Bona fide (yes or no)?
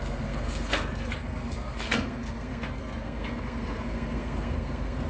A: no